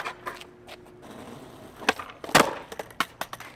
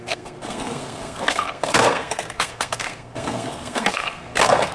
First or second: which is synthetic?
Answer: second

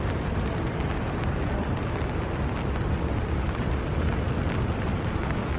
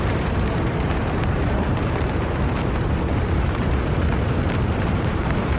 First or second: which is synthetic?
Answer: second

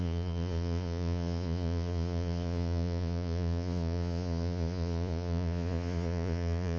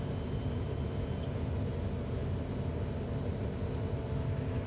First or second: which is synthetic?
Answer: first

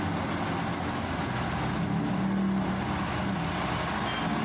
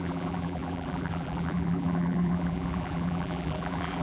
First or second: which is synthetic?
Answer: second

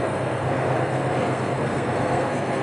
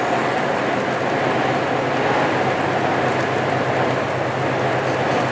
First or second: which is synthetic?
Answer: first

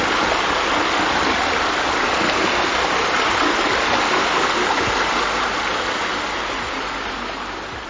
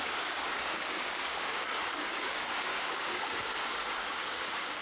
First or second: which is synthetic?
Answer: second